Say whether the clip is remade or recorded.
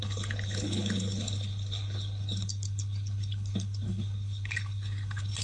remade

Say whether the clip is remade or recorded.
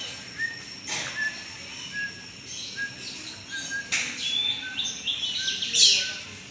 recorded